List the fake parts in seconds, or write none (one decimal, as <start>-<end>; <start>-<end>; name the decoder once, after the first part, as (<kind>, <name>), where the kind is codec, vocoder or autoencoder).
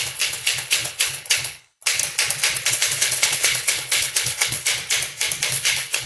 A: 0.0-2.0 (codec, HILCodec); 2.7-4.7; 5.5-6.1